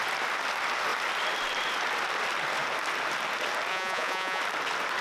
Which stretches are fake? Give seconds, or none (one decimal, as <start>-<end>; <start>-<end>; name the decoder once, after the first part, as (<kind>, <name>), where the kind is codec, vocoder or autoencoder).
3.7-4.4 (vocoder, Vocos)